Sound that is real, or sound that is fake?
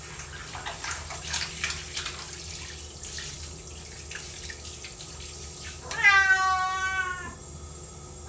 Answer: real